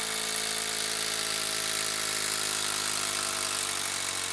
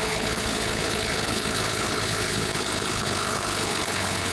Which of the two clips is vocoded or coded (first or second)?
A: second